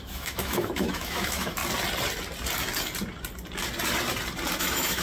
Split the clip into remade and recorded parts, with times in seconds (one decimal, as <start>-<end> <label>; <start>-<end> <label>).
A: 0.0-1.6 remade; 1.6-4.6 recorded; 4.6-5.0 remade